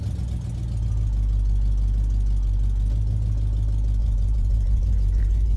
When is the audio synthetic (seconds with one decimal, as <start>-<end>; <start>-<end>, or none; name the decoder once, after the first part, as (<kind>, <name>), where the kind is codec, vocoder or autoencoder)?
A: 4.0-5.6 (vocoder, Vocos)